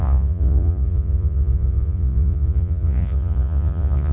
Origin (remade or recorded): remade